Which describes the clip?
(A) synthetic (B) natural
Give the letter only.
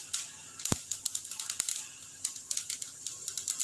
B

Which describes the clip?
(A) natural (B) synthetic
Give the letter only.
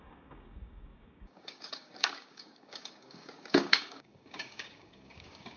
B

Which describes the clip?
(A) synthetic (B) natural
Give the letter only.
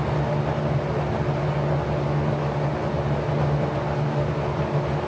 B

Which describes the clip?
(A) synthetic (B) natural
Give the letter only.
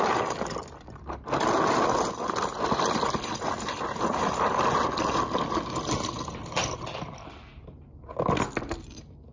B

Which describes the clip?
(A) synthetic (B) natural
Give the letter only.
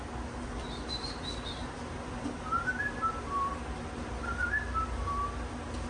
B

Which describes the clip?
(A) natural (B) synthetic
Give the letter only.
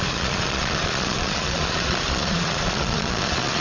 B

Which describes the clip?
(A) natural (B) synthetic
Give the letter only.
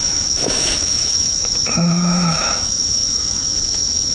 B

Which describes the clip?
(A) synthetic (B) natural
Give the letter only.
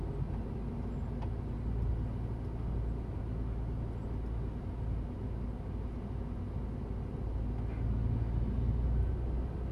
B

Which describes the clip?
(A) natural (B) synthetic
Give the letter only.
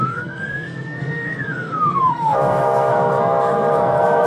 B